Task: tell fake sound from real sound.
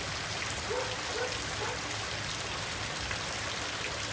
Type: real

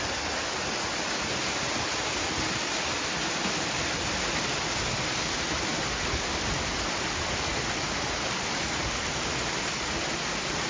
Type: real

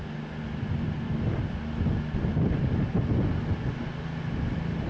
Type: real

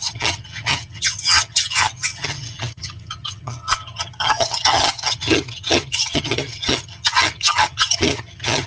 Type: fake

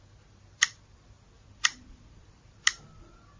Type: real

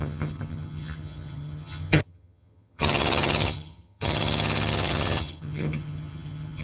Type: fake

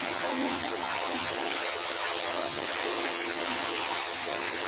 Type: fake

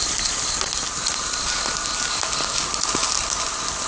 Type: real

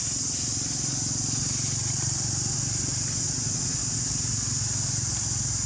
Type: real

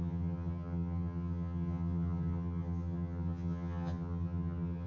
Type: fake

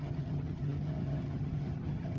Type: fake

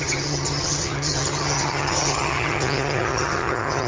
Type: fake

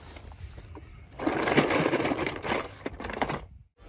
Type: real